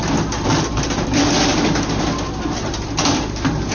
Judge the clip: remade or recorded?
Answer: recorded